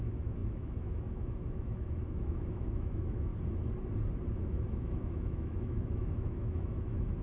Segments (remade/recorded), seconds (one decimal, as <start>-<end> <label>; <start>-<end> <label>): 0.0-3.3 remade; 3.3-4.3 recorded; 4.3-7.2 remade